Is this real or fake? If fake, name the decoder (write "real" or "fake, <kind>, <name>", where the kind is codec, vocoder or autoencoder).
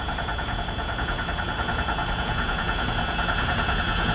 fake, vocoder, Vocos